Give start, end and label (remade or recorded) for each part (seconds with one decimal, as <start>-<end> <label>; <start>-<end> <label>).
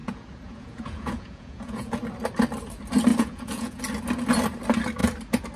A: 0.0-2.0 remade; 2.0-3.1 recorded; 3.1-3.8 remade; 3.8-5.6 recorded